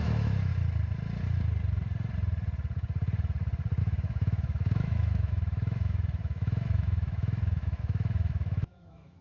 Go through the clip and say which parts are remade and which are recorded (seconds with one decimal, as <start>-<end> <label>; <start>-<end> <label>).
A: 0.0-0.5 remade; 0.5-3.8 recorded; 3.8-9.2 remade